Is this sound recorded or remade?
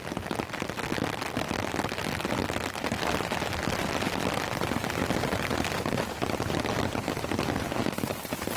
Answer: recorded